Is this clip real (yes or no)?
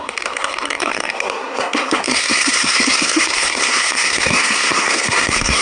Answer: no